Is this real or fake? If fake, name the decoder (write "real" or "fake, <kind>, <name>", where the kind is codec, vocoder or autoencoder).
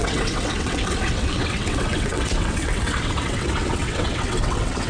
fake, vocoder, WaveNeXt